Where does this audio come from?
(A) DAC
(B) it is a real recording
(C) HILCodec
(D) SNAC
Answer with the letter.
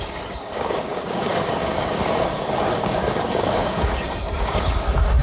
A